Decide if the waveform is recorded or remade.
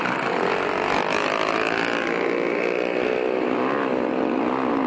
recorded